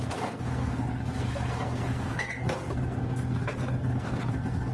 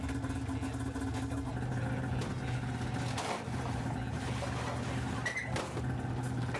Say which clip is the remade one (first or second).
first